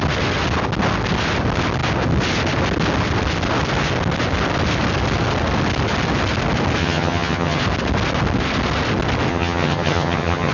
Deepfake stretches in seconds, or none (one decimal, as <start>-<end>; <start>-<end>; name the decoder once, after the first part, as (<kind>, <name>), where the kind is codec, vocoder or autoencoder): 6.8-7.6 (vocoder, HiFi-GAN); 9.3-10.5